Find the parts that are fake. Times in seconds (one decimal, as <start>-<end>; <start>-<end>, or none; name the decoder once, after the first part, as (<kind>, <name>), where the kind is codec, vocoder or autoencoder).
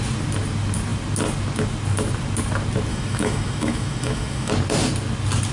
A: 2.9-4.5 (autoencoder, DAC-VAE)